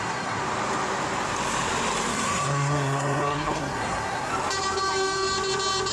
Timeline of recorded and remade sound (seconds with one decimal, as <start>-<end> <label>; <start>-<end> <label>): 0.0-0.4 remade; 0.4-2.1 recorded; 2.1-4.3 remade; 4.3-5.9 recorded